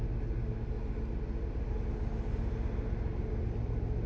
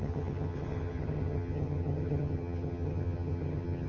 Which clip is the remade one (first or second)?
second